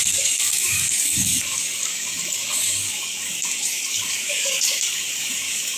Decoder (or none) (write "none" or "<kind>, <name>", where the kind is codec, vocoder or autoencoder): codec, DAC